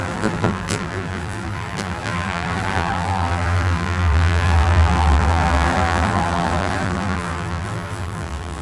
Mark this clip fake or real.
fake